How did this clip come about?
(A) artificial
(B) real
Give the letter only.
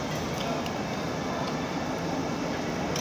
B